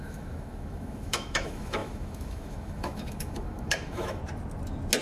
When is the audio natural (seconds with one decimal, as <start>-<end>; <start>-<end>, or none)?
4.2-5.0